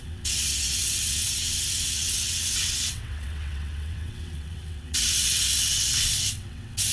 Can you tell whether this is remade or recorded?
remade